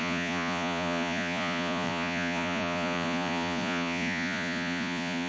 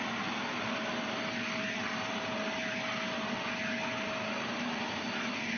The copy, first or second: first